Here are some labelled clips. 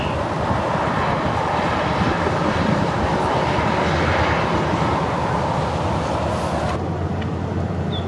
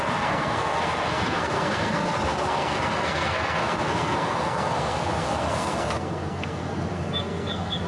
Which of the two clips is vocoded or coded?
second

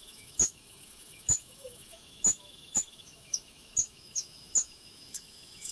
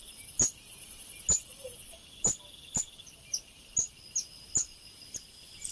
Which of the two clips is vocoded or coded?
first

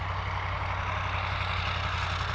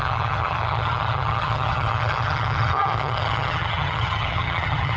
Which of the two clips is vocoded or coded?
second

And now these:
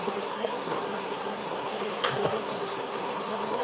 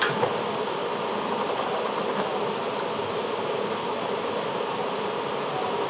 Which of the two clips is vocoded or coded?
first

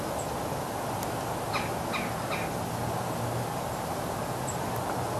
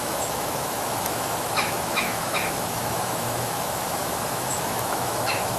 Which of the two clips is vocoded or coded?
second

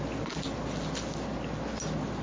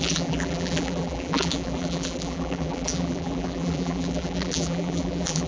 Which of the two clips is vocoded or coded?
second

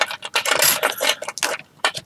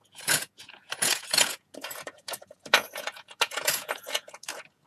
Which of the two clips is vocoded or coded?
second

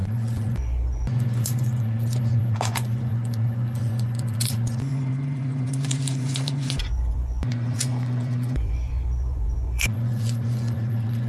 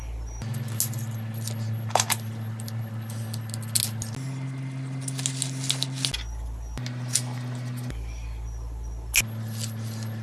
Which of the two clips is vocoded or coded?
first